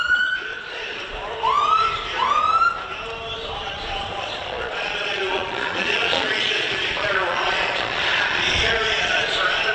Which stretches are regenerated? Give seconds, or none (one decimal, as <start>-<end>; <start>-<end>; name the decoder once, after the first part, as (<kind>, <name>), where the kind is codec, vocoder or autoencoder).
0.0-1.2 (vocoder, Vocos); 3.6-9.7